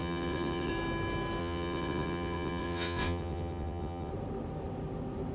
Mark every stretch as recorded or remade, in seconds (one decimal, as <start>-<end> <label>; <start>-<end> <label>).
0.0-0.7 remade; 0.7-1.4 recorded; 1.4-4.1 remade; 4.1-5.3 recorded